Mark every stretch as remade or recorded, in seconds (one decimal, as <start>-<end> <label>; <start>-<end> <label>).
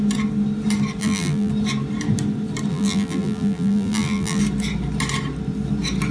0.0-1.0 recorded; 1.0-1.5 remade; 1.5-2.7 recorded; 2.7-4.4 remade; 4.4-6.1 recorded